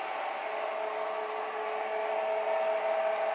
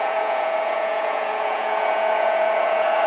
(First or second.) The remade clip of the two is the second